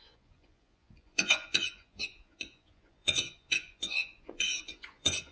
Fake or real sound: fake